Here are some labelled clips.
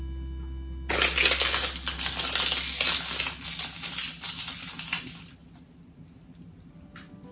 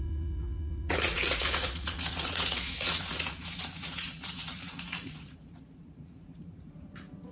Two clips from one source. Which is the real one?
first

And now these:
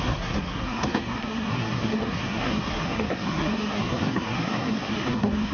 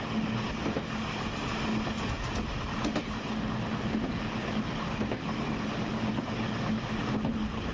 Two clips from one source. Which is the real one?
second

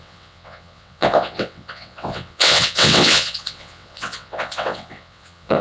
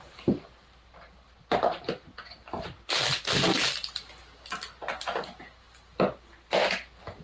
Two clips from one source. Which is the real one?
second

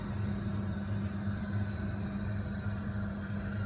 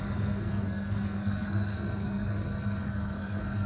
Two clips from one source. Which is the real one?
first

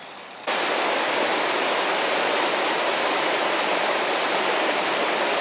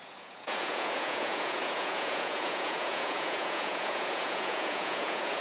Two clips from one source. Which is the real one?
first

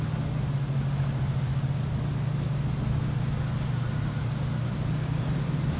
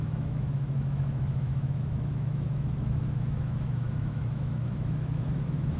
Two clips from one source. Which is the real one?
first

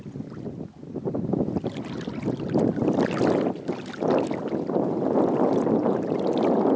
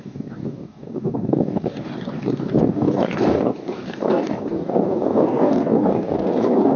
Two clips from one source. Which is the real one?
first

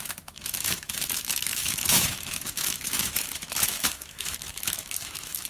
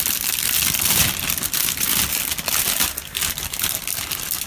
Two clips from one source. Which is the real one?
second